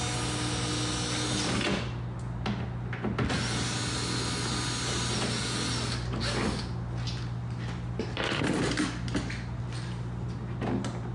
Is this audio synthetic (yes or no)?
no